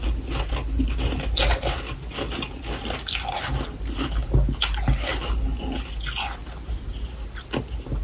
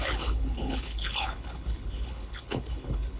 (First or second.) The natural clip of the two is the first